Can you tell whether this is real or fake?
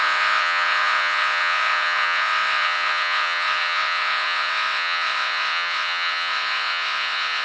fake